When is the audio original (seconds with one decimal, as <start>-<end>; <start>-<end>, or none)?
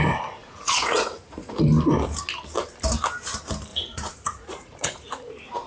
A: 0.0-0.4; 1.6-3.7; 5.1-5.7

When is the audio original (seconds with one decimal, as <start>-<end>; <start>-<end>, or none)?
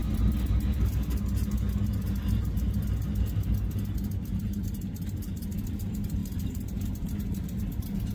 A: 0.0-6.2; 7.6-8.1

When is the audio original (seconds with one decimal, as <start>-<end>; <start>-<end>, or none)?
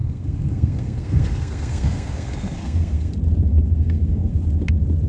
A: 3.1-3.5; 4.3-5.1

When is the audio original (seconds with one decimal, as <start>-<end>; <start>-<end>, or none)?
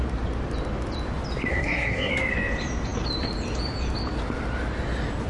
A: 0.0-1.5; 2.1-5.3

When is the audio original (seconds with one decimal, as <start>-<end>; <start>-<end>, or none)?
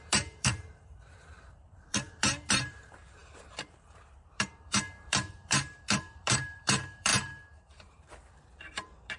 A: none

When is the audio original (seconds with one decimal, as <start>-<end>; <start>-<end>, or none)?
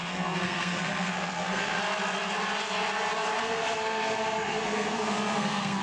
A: 1.8-3.4